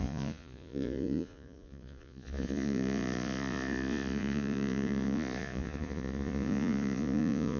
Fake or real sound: fake